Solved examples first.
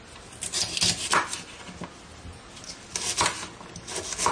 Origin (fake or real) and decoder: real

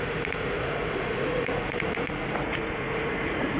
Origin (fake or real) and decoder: fake, vocoder, Vocos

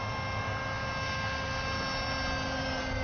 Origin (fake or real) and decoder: real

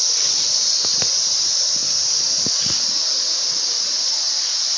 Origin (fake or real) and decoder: real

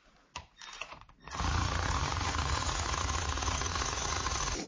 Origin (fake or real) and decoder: fake, vocoder, Vocos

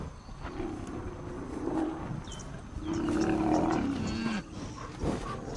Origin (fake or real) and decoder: real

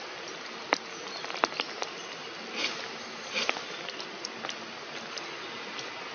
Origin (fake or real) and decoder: real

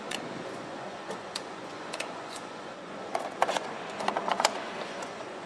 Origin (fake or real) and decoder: fake, vocoder, Vocos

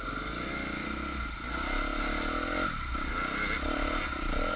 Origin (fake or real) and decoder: real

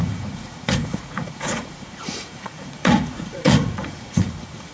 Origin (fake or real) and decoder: fake, vocoder, Vocos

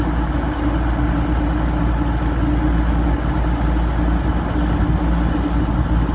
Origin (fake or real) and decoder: real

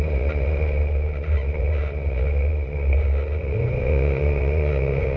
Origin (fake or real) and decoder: fake, vocoder, Vocos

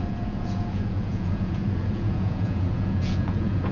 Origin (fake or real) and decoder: fake, vocoder, Vocos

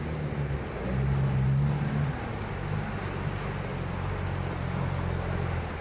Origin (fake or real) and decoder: real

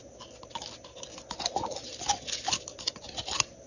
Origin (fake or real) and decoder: real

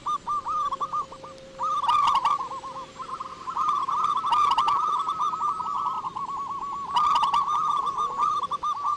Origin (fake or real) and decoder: real